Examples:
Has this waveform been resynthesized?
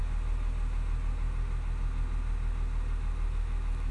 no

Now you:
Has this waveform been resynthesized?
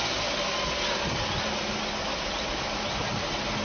no